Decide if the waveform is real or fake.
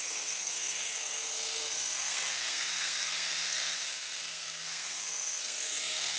fake